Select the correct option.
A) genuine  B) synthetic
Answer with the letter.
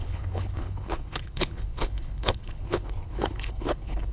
B